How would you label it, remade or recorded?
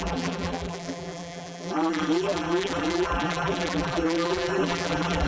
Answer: remade